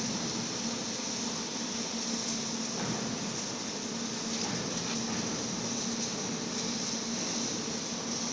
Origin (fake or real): real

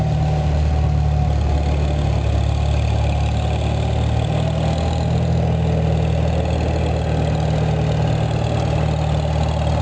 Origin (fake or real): real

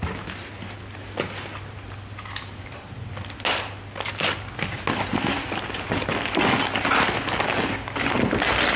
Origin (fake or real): real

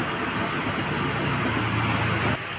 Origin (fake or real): real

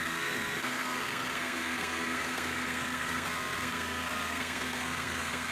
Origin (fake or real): fake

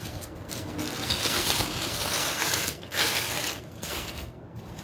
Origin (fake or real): fake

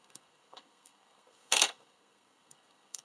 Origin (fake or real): fake